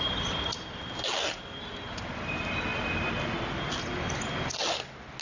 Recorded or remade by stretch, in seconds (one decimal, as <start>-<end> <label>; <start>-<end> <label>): 0.0-5.2 recorded